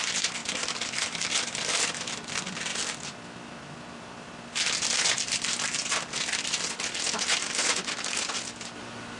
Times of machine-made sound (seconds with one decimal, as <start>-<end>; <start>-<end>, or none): none